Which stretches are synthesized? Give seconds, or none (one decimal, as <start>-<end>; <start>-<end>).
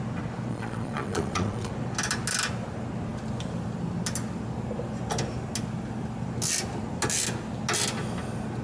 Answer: 0.5-1.7